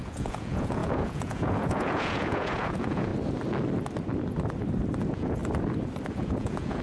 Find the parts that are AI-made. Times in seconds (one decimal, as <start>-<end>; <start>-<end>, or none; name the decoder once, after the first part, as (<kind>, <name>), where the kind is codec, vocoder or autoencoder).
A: 0.0-3.1 (vocoder, Vocos); 5.0-5.4; 6.1-6.8